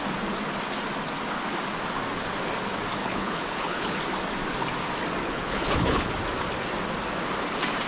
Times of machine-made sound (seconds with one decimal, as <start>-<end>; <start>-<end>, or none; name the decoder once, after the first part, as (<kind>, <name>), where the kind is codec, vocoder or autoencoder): 3.0-4.0 (codec, HILCodec); 5.2-6.1